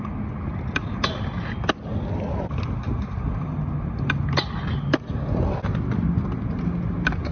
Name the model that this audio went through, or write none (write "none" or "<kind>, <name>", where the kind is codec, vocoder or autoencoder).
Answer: none